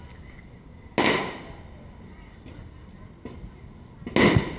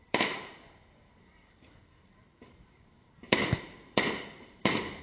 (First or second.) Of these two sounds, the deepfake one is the second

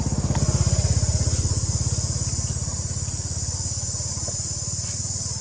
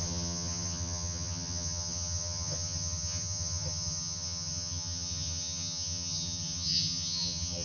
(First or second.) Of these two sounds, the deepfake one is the second